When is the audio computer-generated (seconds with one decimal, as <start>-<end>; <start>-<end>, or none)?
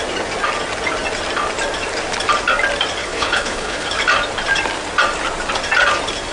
3.0-3.9